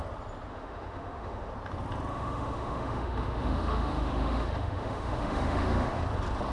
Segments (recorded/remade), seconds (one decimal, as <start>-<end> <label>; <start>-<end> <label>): 0.0-0.5 recorded; 0.5-1.5 remade; 1.5-2.1 recorded; 2.1-6.0 remade; 6.0-6.5 recorded